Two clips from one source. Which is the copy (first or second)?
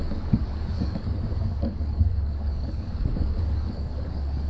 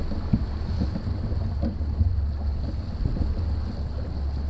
first